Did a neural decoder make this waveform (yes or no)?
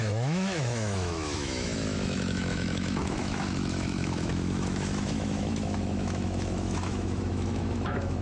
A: yes